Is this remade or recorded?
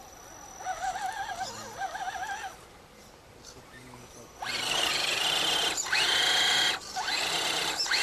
recorded